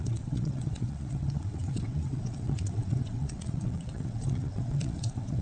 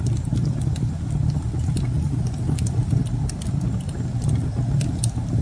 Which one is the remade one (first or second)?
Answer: first